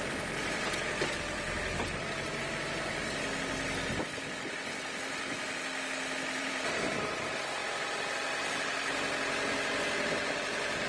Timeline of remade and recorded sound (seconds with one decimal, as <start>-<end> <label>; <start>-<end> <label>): 0.0-3.0 remade; 3.0-6.2 recorded; 6.2-7.6 remade; 7.6-10.9 recorded